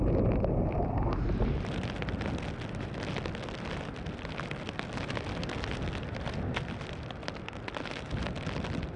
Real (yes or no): yes